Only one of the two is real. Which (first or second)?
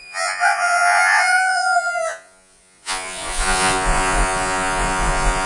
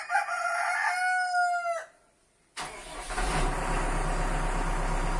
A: second